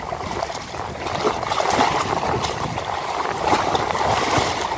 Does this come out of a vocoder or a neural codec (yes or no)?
no